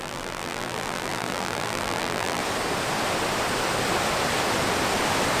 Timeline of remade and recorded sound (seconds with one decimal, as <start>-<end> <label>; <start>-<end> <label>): 0.0-2.4 remade; 2.4-5.4 recorded